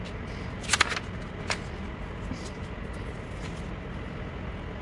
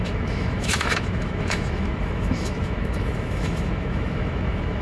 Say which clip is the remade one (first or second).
second